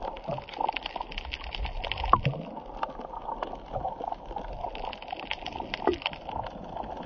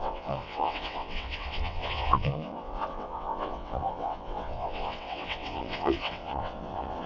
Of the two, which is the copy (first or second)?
second